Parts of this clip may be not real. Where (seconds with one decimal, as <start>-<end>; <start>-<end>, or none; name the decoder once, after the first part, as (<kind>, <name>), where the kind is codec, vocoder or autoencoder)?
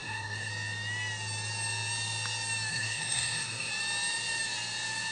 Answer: 0.0-0.5 (codec, SNAC); 2.7-3.7